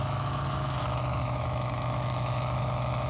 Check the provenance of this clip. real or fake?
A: fake